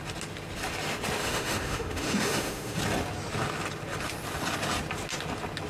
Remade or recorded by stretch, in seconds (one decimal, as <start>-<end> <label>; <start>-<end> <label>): 0.0-1.2 recorded; 1.2-2.8 remade; 2.8-5.7 recorded